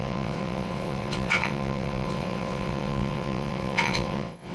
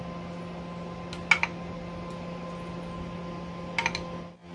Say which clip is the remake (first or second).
first